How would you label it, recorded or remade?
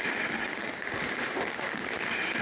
recorded